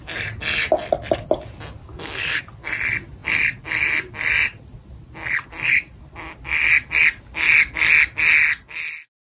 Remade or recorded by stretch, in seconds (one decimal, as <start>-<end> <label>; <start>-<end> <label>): 0.0-1.8 recorded; 1.8-2.4 remade; 2.4-9.2 recorded